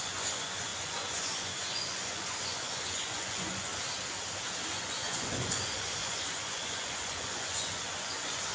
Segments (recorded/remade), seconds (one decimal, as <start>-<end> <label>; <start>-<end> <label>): 0.0-3.7 remade; 3.7-4.7 recorded; 4.7-8.5 remade